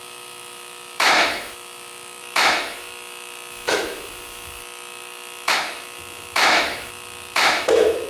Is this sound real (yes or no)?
no